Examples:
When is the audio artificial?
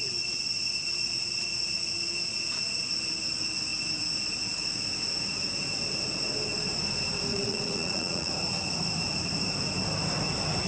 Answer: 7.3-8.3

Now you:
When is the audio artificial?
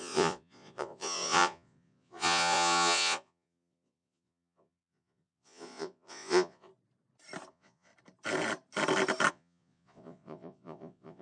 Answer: 0.0-6.7; 7.5-7.9; 9.3-11.2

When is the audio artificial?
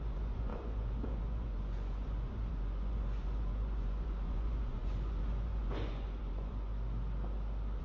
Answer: 0.0-6.7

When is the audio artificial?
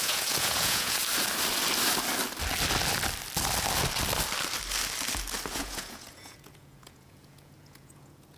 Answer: 0.0-1.0; 5.5-8.4